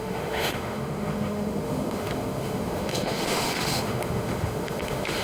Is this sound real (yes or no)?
no